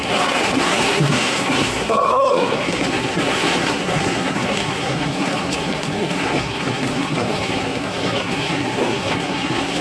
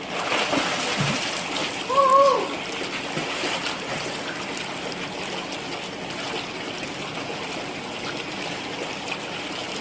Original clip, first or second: second